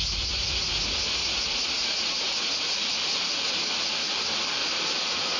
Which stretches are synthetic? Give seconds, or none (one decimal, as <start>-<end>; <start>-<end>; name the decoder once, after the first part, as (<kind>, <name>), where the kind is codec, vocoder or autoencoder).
1.2-3.5 (vocoder, Vocos); 4.6-5.4